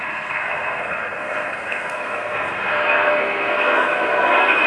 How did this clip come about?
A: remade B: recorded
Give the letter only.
A